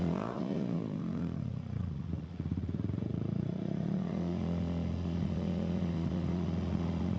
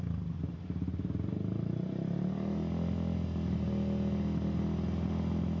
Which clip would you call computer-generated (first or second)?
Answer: first